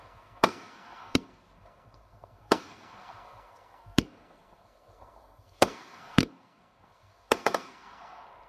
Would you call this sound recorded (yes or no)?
no